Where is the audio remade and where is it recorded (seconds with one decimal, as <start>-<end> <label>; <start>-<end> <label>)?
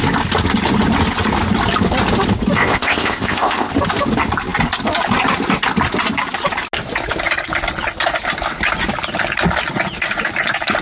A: 0.0-2.6 recorded; 2.6-3.7 remade; 3.7-10.8 recorded